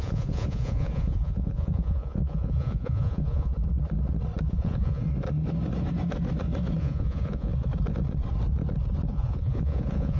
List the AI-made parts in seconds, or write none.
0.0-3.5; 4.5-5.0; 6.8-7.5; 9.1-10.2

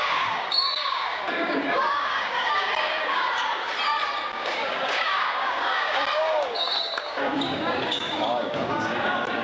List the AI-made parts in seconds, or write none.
0.0-3.7; 4.3-9.4

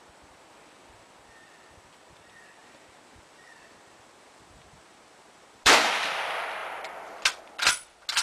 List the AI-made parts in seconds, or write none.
2.6-5.9

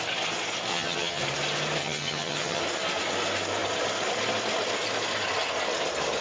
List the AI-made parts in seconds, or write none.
0.7-1.2; 1.8-2.6

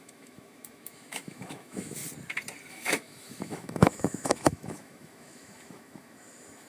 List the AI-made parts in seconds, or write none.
0.0-2.0; 2.7-6.7